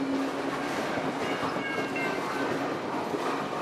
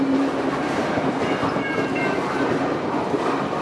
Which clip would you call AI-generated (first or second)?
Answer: second